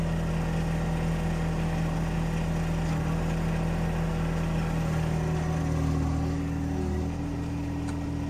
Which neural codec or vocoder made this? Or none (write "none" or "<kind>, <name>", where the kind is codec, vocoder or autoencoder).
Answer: none